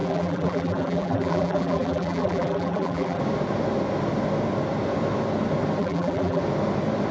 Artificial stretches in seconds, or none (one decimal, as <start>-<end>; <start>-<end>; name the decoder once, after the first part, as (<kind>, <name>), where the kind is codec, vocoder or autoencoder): 0.0-3.2 (vocoder, BigVGAN v2); 5.8-6.4